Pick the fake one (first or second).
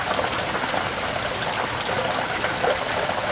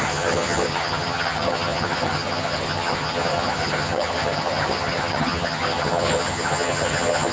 second